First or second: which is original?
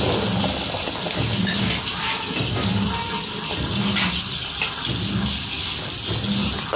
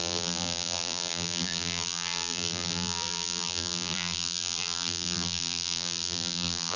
first